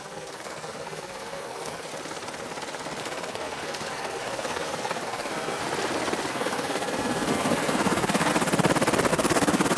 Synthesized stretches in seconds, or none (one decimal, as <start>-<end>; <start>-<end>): 0.0-1.9; 3.0-5.6; 6.3-8.3; 9.1-9.8